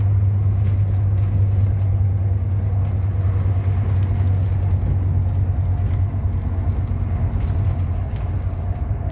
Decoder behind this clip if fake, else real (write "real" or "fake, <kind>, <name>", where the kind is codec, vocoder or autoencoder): real